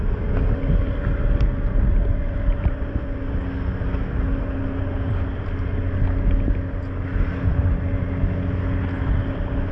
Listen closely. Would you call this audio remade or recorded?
recorded